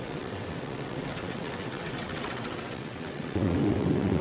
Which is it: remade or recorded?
remade